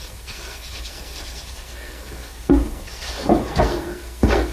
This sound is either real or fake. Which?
fake